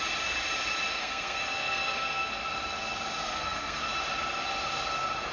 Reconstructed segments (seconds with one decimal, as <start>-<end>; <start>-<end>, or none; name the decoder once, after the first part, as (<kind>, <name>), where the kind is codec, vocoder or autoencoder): 1.0-2.3 (codec, SNAC); 3.2-3.8